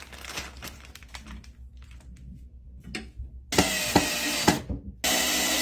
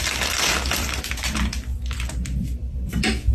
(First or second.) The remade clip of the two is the second